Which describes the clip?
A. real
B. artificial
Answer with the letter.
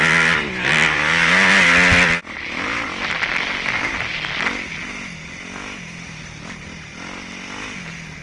A